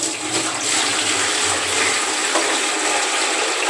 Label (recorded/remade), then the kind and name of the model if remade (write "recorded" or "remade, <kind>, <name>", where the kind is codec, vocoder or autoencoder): recorded